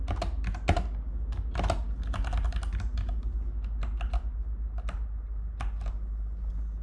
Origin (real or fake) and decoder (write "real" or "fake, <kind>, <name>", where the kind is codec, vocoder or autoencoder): real